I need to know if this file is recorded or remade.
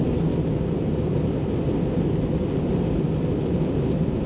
recorded